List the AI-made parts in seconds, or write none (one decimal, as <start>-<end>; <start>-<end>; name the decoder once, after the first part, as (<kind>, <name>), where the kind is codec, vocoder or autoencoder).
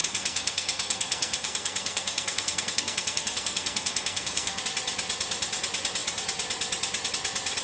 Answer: 0.0-4.6 (codec, SNAC)